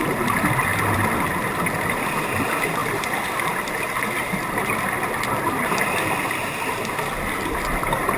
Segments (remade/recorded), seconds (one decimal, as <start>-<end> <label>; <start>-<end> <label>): 0.0-0.7 recorded; 0.7-1.9 remade; 1.9-2.8 recorded; 2.8-3.7 remade; 3.7-8.2 recorded